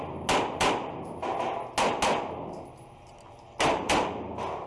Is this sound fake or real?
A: real